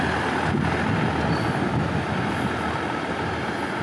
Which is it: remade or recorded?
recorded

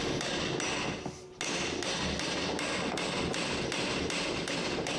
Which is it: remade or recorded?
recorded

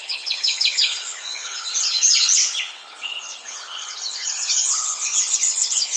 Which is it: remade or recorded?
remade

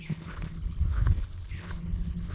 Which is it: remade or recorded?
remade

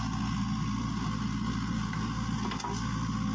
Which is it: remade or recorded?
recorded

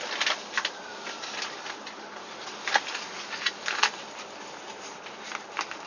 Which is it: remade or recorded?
recorded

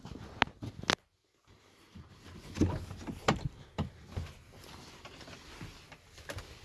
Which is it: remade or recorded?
recorded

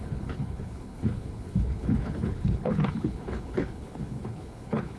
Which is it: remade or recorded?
remade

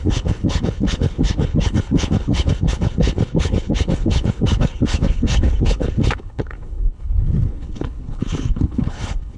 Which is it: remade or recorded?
remade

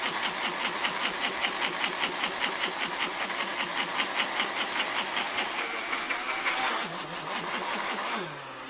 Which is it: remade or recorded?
recorded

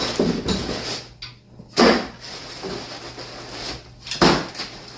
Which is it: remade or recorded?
recorded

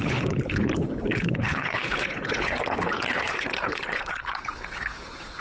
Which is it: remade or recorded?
remade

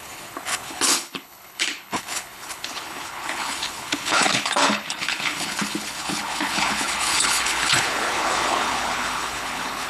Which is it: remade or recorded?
remade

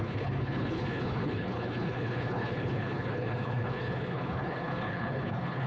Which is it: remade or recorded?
remade